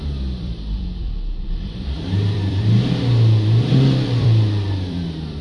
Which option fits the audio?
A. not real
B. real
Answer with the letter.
A